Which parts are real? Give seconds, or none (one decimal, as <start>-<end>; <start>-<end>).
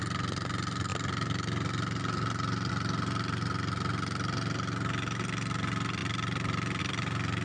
0.0-7.4